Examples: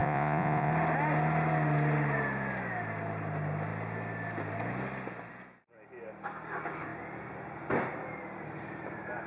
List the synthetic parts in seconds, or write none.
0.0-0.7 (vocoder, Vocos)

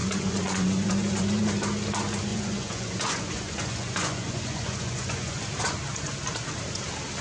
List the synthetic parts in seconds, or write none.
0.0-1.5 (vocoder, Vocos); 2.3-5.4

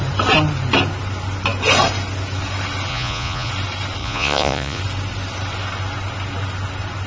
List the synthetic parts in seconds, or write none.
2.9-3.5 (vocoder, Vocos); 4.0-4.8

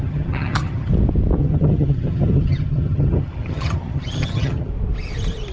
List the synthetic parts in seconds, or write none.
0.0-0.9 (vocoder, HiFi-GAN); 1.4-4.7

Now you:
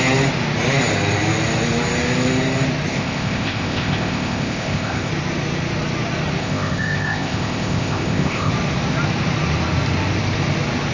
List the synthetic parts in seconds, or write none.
2.9-5.1 (codec, ZipCodec); 6.4-8.5

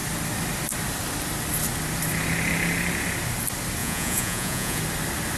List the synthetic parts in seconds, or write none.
3.8-4.8 (vocoder, Vocos)

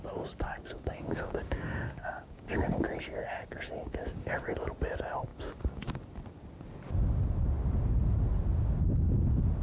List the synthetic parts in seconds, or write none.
0.5-4.4 (codec, DAC); 5.3-6.0

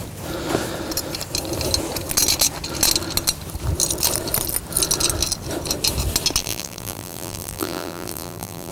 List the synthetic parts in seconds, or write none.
6.4-8.7 (vocoder, BigVGAN v2)